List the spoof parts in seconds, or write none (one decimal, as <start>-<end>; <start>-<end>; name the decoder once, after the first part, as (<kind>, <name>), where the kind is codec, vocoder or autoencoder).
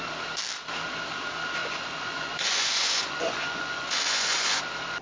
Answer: 1.6-4.6 (vocoder, Vocos)